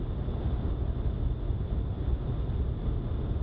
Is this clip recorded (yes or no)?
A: yes